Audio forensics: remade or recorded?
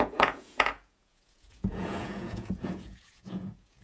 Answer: remade